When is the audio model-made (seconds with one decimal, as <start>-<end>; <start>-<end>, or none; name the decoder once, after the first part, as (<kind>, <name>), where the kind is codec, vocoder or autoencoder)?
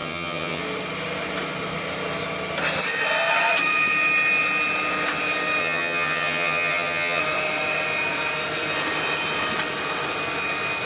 0.0-0.6 (vocoder, HiFi-GAN); 5.6-7.2